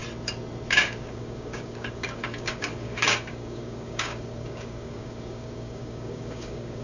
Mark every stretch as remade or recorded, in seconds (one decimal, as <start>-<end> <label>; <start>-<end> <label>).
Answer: 0.0-0.7 recorded; 0.7-6.8 remade